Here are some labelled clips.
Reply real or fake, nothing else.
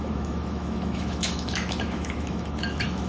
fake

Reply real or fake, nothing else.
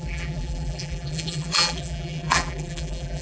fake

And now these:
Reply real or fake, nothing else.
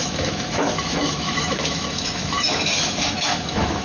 fake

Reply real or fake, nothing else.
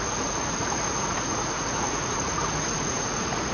fake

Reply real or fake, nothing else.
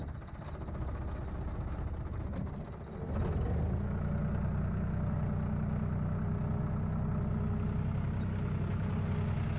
real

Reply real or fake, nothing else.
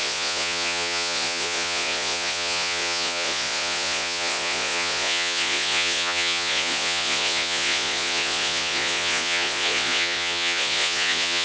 fake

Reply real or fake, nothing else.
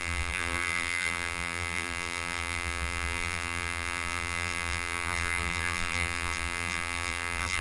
fake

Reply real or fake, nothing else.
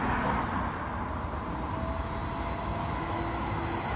real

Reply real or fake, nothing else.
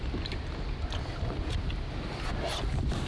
real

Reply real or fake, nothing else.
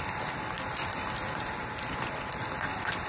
real